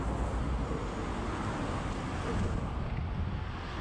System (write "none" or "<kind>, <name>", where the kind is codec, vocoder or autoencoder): none